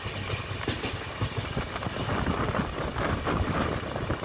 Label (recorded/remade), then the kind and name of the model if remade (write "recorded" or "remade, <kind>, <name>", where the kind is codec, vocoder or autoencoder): recorded